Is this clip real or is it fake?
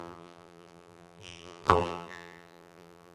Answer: fake